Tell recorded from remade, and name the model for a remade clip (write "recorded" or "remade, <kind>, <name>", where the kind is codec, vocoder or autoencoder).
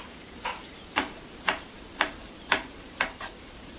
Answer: remade, vocoder, BigVGAN v2